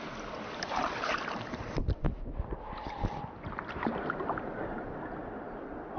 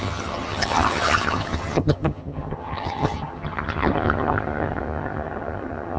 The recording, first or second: first